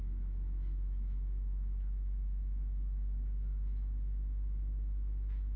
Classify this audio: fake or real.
fake